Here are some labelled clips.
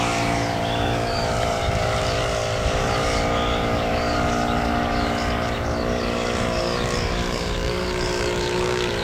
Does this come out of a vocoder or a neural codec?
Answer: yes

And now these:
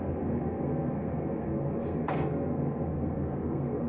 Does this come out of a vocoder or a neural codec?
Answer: yes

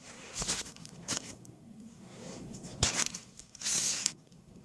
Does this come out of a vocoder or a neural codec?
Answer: yes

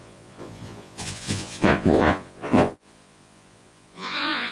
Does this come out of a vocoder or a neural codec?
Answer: yes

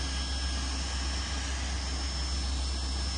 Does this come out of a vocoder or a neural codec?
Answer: no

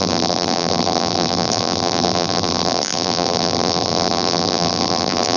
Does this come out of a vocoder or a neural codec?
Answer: yes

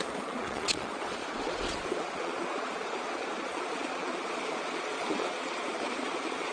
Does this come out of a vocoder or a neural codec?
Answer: yes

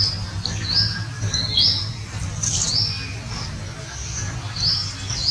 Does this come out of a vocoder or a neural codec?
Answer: no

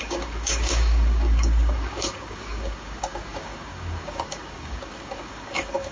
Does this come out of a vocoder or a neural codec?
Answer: yes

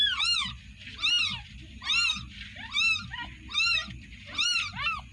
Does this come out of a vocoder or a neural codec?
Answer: no